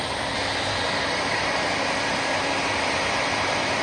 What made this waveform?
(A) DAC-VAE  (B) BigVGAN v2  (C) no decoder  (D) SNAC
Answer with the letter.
B